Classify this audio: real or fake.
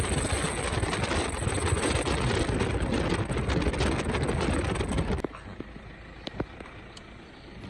real